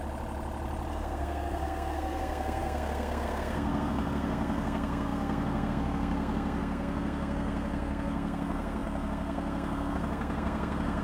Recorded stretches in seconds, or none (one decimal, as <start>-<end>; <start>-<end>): 0.0-0.9